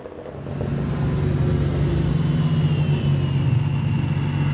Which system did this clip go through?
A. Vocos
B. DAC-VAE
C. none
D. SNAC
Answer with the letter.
C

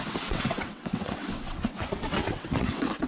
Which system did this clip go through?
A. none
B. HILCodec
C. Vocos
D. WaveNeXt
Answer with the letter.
D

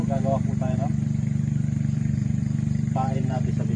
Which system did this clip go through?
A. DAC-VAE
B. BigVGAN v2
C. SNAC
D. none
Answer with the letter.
B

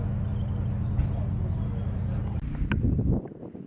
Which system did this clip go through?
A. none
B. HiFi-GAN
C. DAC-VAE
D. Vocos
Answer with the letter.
A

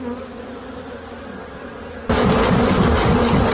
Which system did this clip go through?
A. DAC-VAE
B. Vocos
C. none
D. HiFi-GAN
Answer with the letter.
C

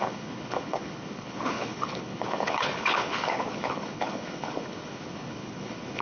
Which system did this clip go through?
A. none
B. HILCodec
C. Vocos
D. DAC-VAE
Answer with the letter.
B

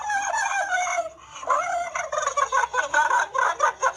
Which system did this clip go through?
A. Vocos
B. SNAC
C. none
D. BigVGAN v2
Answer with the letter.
C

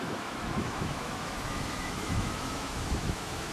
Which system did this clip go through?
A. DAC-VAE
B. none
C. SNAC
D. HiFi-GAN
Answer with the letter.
A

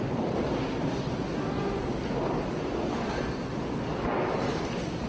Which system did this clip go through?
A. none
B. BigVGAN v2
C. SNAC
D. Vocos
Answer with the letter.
A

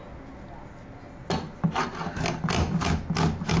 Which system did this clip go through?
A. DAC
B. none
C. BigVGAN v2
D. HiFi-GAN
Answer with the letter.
B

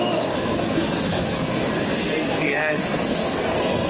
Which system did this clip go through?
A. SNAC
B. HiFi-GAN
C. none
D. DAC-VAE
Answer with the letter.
A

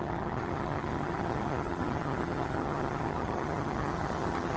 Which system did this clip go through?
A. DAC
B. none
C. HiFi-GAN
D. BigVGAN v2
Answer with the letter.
C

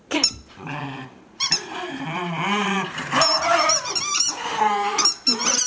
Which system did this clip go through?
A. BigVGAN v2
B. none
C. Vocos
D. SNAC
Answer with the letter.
A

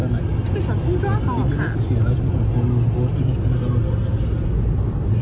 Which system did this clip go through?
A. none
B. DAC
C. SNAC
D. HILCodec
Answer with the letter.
A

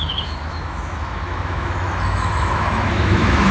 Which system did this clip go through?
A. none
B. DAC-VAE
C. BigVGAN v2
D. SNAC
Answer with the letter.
B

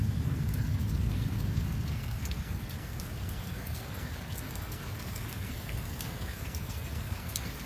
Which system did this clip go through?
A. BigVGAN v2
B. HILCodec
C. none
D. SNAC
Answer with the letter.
D